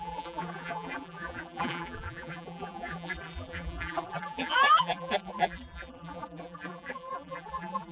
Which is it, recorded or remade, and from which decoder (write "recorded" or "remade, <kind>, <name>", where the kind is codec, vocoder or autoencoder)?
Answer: remade, vocoder, BigVGAN v2